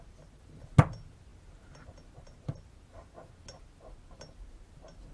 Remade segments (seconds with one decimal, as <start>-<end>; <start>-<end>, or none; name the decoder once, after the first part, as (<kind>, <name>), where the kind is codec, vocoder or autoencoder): none